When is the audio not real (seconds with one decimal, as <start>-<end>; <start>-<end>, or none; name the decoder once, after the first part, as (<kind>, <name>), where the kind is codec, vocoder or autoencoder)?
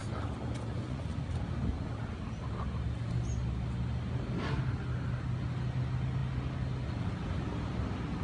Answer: 0.7-1.3 (vocoder, Vocos)